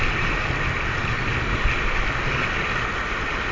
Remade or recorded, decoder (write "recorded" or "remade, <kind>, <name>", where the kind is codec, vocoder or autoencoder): recorded